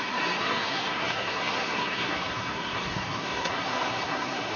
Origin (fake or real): fake